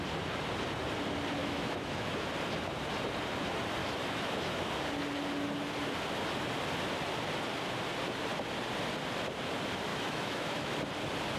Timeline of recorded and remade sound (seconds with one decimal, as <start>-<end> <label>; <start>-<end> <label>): 0.0-1.4 recorded; 1.4-2.3 remade; 2.3-3.8 recorded; 3.8-4.7 remade; 4.7-9.9 recorded; 9.9-10.7 remade; 10.7-11.4 recorded